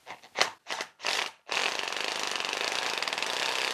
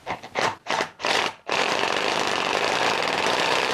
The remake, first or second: second